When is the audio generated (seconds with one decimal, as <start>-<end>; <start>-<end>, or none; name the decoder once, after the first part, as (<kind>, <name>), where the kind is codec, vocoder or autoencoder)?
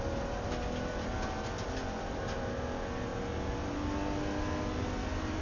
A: none